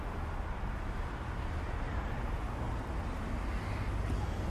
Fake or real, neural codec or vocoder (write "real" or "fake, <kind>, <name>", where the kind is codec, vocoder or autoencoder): real